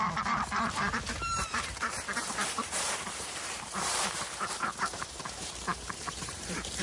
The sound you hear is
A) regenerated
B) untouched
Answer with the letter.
A